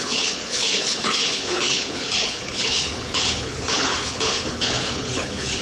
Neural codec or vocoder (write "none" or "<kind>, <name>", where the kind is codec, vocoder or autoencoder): codec, HILCodec